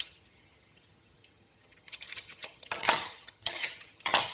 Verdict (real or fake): fake